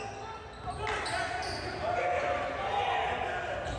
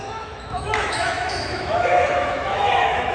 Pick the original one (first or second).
first